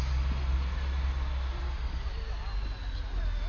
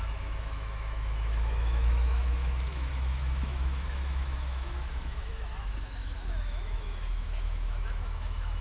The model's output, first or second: second